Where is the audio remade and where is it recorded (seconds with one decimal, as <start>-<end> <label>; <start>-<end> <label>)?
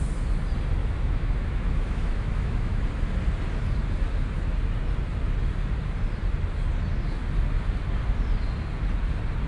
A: 0.0-0.8 recorded; 0.8-2.8 remade; 2.8-9.5 recorded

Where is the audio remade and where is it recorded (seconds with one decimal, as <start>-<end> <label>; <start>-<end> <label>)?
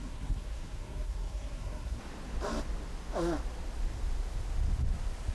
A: 0.0-2.0 remade; 2.0-5.3 recorded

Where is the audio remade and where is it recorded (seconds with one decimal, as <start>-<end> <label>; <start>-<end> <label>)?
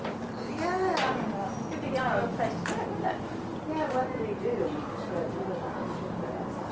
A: 0.0-6.7 recorded